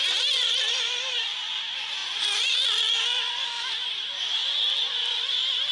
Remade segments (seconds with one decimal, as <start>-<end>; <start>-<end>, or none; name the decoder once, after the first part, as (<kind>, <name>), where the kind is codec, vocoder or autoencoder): 0.0-2.0 (vocoder, BigVGAN v2); 3.0-4.4; 5.2-5.7